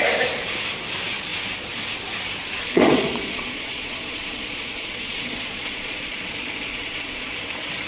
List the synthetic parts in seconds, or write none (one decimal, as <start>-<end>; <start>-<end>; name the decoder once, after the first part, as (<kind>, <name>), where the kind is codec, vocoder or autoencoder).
2.6-7.3 (vocoder, Vocos)

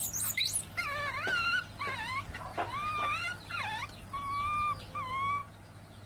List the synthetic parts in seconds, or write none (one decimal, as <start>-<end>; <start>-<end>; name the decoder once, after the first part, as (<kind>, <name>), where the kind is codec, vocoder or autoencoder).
5.4-6.1 (vocoder, Vocos)

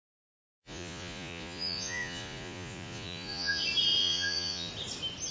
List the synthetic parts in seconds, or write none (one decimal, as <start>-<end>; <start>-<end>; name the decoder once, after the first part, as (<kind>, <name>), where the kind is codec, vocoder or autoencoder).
0.4-3.6 (vocoder, Vocos); 4.0-4.7

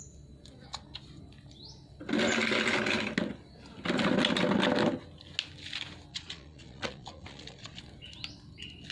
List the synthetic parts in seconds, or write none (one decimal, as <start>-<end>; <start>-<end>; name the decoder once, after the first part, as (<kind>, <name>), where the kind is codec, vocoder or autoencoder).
6.1-7.8 (vocoder, Vocos)